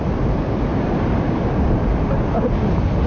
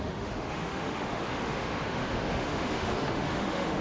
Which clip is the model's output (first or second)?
second